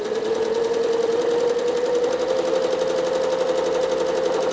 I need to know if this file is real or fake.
real